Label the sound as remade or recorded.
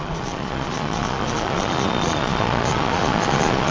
remade